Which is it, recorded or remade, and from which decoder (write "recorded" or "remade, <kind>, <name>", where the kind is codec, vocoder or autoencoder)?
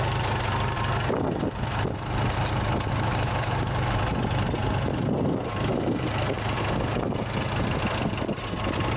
recorded